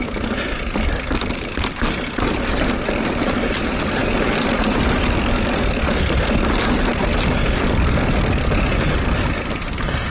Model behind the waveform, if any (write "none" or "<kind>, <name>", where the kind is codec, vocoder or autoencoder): none